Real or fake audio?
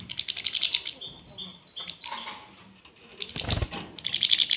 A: real